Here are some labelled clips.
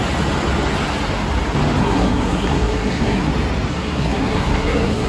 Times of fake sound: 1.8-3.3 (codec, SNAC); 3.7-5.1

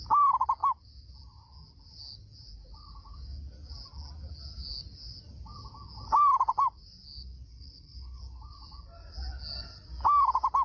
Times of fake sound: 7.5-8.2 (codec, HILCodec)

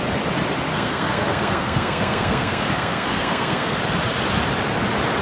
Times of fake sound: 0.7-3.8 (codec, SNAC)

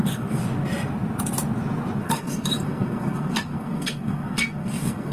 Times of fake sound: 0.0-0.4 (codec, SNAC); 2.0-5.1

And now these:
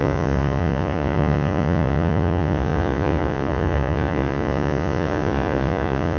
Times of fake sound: 0.0-6.2 (vocoder, Vocos)